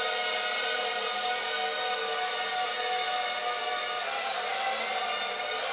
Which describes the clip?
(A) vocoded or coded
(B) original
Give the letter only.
B